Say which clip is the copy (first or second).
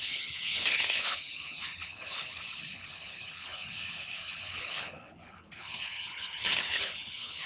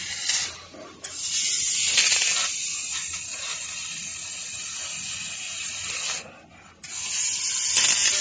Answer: first